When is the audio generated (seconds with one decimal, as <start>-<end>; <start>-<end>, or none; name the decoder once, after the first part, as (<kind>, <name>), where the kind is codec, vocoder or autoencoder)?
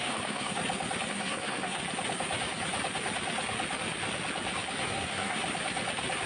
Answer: 0.0-0.6 (codec, SNAC); 1.1-1.8; 4.8-5.4